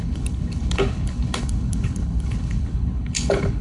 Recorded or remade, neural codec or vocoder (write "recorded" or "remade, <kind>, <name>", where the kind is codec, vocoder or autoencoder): remade, codec, HILCodec